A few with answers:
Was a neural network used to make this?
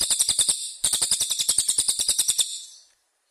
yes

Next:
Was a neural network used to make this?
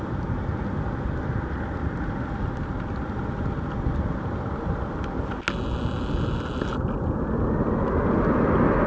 no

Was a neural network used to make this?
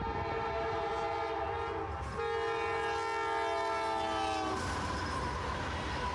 no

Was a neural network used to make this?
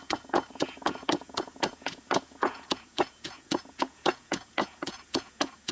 yes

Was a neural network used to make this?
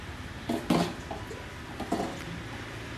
no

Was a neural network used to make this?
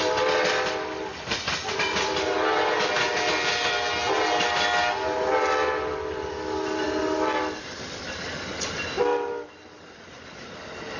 no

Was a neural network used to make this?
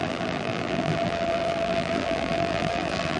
yes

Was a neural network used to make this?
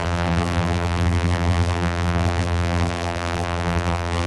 yes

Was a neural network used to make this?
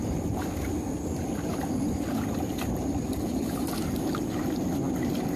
no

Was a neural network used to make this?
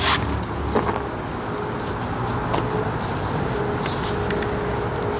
no